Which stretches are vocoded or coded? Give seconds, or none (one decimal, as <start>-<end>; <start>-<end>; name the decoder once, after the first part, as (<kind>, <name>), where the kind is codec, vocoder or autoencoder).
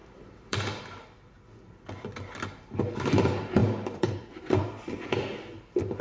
0.0-0.8 (vocoder, BigVGAN v2); 3.6-4.9